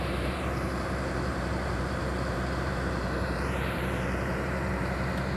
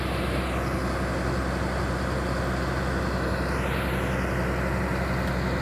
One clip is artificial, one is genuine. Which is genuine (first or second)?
second